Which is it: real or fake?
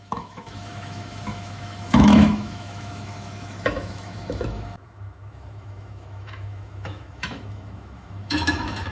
fake